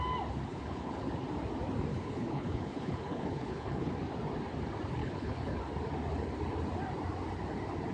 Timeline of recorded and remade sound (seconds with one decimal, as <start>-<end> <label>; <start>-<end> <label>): 0.0-0.5 recorded; 0.5-1.1 remade; 1.1-1.9 recorded; 1.9-3.9 remade; 3.9-5.0 recorded; 5.0-5.6 remade; 5.6-7.9 recorded